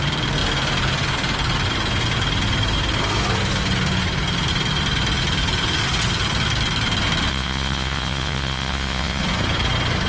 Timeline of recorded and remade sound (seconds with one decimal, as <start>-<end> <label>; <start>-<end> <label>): 0.0-7.3 recorded; 7.3-9.2 remade; 9.2-10.1 recorded

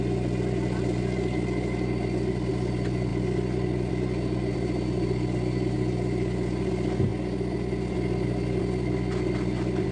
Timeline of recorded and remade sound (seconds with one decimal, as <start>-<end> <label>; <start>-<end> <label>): 0.0-9.9 recorded

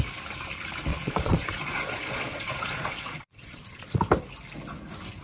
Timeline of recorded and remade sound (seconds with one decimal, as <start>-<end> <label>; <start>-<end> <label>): 0.0-0.9 recorded; 0.9-4.0 remade; 4.0-5.2 recorded

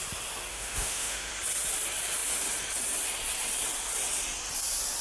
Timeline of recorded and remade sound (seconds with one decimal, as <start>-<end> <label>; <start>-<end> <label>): 0.0-0.5 recorded; 0.5-1.3 remade; 1.3-5.0 recorded